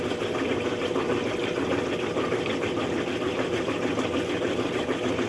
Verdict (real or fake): real